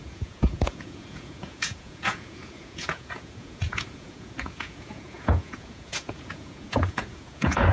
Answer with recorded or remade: remade